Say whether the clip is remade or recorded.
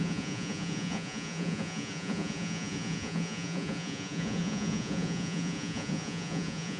remade